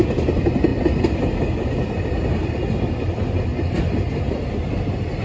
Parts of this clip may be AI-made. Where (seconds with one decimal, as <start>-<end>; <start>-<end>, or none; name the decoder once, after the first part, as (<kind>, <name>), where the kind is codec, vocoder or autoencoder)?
none